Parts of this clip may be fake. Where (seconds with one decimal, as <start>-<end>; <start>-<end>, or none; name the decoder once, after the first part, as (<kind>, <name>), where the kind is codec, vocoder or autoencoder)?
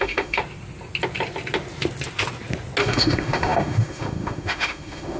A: 0.0-0.4 (autoencoder, DAC-VAE); 2.8-5.2